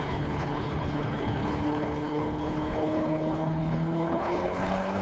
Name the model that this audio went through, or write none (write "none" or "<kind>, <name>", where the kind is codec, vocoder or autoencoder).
codec, HILCodec